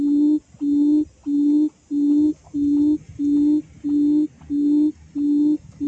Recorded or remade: recorded